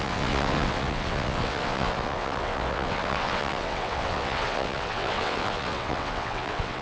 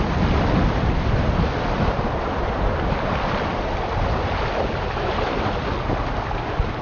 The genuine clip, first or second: second